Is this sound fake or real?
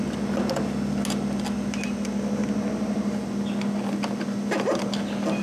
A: real